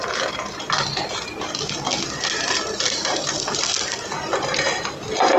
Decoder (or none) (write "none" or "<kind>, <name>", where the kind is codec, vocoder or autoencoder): none